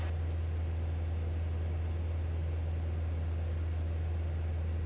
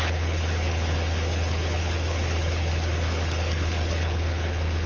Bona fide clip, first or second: first